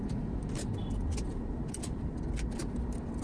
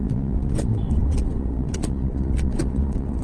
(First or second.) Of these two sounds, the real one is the first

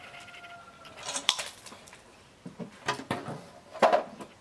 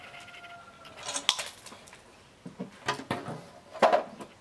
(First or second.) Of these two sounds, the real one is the second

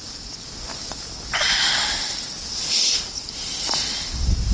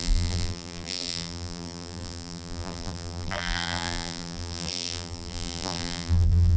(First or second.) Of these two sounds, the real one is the first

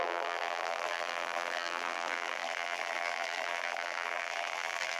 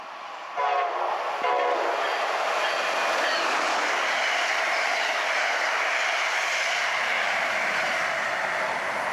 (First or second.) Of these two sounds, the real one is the second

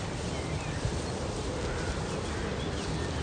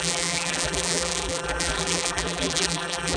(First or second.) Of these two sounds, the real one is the first